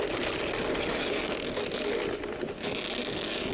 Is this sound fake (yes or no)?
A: no